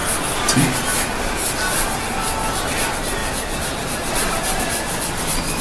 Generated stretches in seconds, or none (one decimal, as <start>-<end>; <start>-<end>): 3.2-4.6

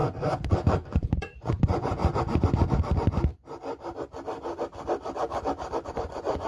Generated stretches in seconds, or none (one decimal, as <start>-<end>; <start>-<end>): 0.0-2.0; 5.9-6.5